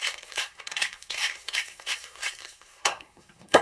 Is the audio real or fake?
fake